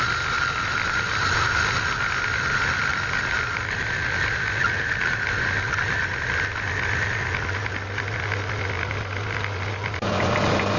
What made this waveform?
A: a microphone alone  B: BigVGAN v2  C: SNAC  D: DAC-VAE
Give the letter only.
A